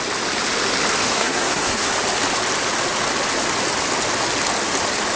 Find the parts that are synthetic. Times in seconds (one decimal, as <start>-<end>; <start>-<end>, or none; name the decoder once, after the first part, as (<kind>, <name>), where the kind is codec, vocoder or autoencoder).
1.1-1.9 (codec, SNAC)